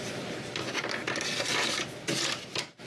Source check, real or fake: real